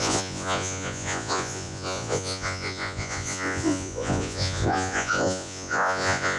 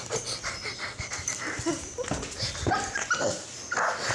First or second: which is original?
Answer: second